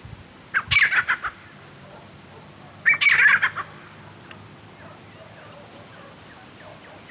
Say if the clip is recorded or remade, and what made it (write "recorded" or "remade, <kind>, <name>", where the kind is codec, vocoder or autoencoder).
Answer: recorded